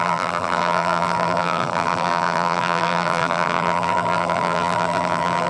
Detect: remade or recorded remade